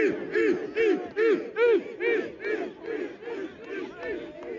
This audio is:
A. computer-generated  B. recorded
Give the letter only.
B